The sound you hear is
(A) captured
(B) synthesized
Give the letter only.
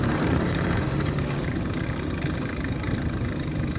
B